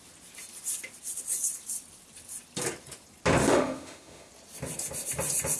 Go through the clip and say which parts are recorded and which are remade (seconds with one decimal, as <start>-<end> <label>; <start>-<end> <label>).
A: 0.0-3.4 recorded; 3.4-4.3 remade; 4.3-5.6 recorded